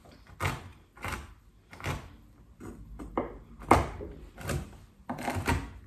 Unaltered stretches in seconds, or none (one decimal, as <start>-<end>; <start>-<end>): 0.0-5.9